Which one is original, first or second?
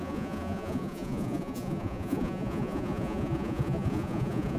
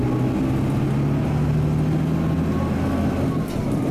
second